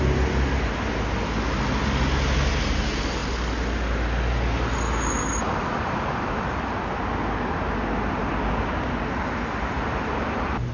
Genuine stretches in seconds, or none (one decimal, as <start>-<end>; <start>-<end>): 0.0-8.7; 9.7-10.7

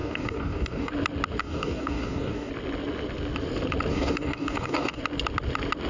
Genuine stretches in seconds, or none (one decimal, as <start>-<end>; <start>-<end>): 0.9-1.4; 2.5-3.9; 5.0-5.9